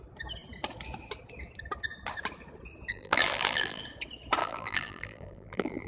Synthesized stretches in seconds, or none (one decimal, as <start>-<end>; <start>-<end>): 2.9-3.8; 4.4-5.9